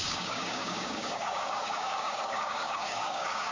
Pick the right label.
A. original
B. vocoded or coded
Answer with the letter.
B